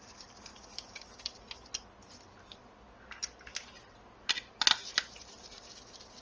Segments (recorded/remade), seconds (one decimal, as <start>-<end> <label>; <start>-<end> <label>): 0.0-6.2 recorded